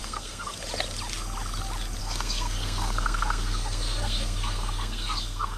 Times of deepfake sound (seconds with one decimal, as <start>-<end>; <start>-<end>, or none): 0.0-0.6; 2.0-5.6